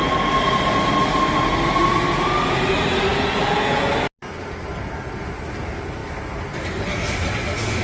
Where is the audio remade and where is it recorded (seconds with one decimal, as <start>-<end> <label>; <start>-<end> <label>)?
0.0-3.1 recorded; 3.1-3.9 remade; 3.9-7.8 recorded